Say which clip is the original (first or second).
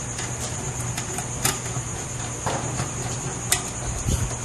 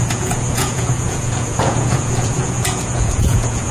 first